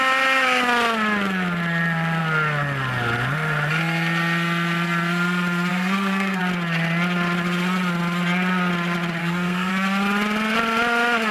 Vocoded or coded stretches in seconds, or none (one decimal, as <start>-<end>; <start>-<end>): 5.7-6.4; 9.2-9.7